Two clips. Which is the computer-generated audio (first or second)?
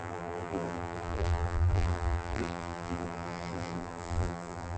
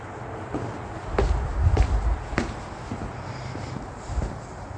first